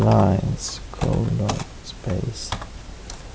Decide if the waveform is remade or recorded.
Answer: recorded